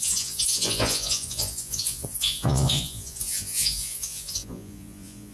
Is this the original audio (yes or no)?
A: no